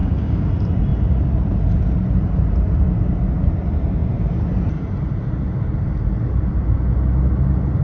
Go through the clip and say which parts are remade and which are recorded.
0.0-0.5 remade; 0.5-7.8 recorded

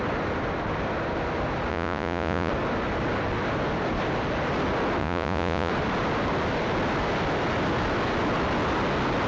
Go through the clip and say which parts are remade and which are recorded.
0.0-1.7 recorded; 1.7-2.5 remade; 2.5-5.0 recorded; 5.0-5.7 remade; 5.7-9.3 recorded

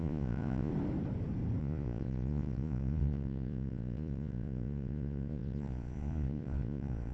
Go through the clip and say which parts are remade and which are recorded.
0.0-0.7 remade; 0.7-1.6 recorded; 1.6-7.1 remade

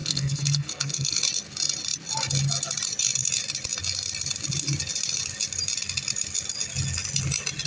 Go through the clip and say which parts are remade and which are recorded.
0.0-1.2 remade; 1.2-7.7 recorded

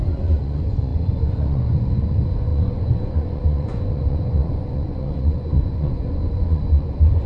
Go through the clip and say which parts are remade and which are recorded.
0.0-7.3 remade